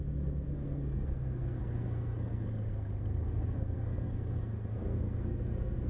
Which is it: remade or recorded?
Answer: remade